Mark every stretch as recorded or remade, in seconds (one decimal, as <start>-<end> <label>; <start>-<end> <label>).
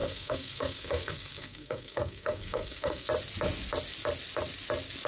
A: 0.0-3.1 remade; 3.1-5.1 recorded